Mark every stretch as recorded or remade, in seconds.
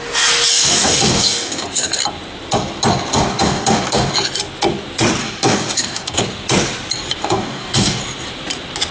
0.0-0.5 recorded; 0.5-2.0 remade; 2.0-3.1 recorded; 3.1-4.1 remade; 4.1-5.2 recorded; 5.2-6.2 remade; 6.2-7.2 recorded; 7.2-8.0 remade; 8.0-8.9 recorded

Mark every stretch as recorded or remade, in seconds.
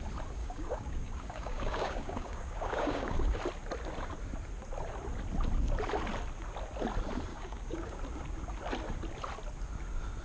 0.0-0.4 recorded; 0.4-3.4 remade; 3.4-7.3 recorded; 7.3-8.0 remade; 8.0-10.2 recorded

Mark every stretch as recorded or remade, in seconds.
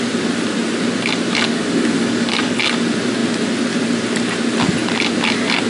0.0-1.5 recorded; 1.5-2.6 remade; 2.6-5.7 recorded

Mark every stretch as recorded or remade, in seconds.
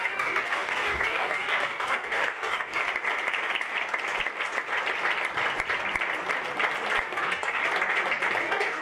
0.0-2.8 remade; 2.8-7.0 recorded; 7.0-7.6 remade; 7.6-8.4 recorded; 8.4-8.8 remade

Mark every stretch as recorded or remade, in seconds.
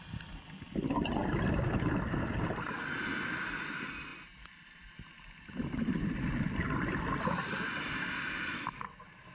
0.0-9.3 recorded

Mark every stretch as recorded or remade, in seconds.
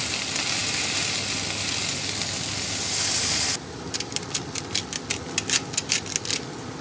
0.0-6.8 recorded